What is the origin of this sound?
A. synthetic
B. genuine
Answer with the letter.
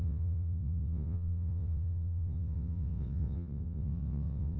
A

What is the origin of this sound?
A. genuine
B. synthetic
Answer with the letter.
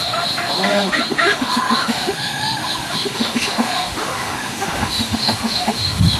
B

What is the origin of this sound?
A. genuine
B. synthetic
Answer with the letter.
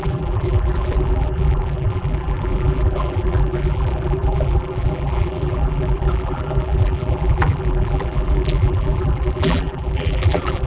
B